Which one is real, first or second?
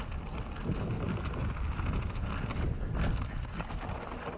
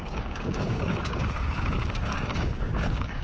first